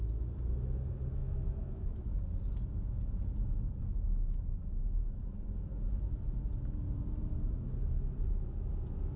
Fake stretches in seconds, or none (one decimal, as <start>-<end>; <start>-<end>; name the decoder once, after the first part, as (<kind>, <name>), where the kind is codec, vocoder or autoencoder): 1.2-2.1 (autoencoder, DAC-VAE); 3.8-4.6